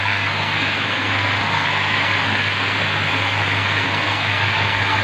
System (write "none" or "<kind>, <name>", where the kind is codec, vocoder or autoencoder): codec, SNAC